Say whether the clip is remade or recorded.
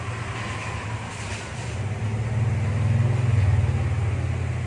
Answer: recorded